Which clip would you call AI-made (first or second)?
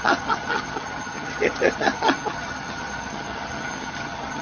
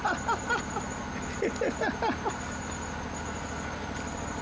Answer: first